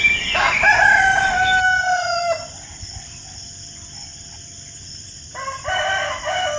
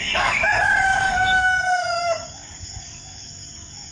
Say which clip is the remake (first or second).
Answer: second